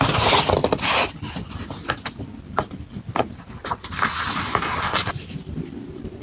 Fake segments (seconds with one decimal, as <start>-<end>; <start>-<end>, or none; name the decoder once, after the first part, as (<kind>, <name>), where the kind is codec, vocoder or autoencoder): none